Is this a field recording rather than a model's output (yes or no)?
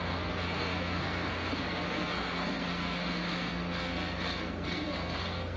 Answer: no